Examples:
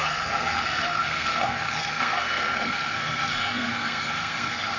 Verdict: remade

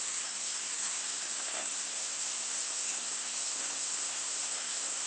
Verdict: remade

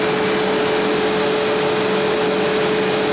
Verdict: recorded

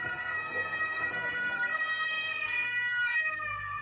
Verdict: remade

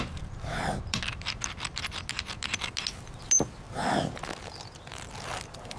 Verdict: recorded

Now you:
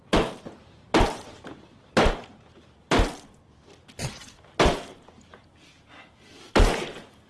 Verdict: recorded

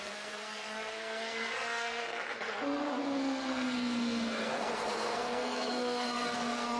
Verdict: remade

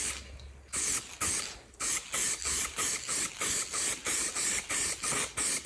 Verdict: recorded